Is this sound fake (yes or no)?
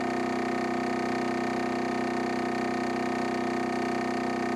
no